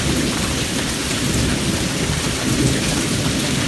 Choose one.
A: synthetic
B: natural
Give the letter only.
B